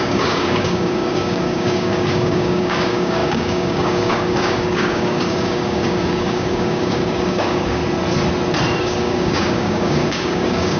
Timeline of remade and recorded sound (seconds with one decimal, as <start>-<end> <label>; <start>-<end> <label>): 0.0-7.8 remade; 7.8-8.8 recorded; 8.8-10.8 remade